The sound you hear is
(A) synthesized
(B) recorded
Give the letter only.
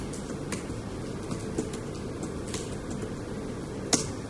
B